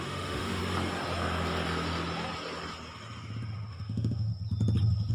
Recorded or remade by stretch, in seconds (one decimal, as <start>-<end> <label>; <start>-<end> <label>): 0.0-0.6 remade; 0.6-3.7 recorded; 3.7-4.3 remade; 4.3-5.1 recorded

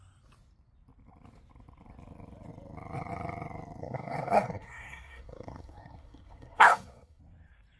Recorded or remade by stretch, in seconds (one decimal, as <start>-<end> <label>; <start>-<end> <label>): 0.0-3.8 recorded; 3.8-7.2 remade; 7.2-7.8 recorded

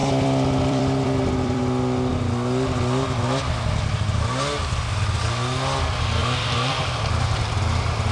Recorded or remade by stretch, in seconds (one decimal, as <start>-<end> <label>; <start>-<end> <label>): 0.0-1.6 remade; 1.6-6.2 recorded; 6.2-7.4 remade; 7.4-8.1 recorded

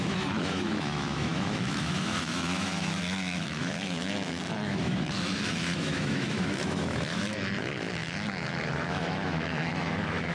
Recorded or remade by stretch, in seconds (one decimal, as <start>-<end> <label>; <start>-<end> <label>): 0.0-10.3 remade

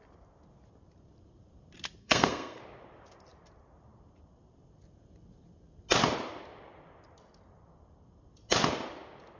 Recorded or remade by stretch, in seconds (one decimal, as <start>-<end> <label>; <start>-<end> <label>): 0.0-2.0 recorded; 2.0-2.6 remade; 2.6-9.4 recorded

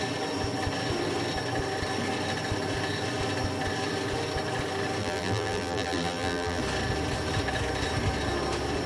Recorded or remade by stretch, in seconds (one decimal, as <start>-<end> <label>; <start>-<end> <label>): 0.0-5.0 recorded; 5.0-6.6 remade; 6.6-8.9 recorded